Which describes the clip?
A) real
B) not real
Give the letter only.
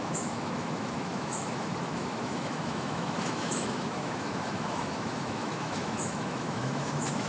B